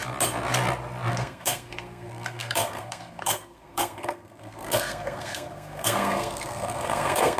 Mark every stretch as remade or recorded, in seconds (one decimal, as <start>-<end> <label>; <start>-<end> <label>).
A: 0.0-1.1 recorded; 1.1-7.4 remade